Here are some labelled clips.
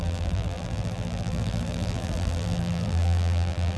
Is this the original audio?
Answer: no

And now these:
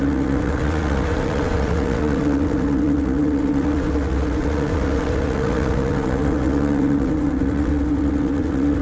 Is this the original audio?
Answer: no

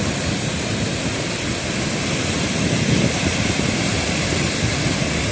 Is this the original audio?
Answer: yes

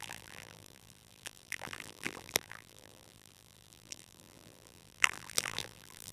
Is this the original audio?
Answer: no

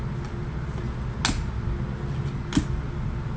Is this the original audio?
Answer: yes